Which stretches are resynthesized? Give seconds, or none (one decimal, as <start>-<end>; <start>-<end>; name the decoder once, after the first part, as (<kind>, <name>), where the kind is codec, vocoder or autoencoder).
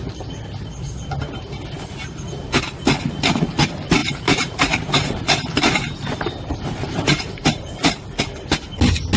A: 4.0-8.2 (vocoder, BigVGAN v2)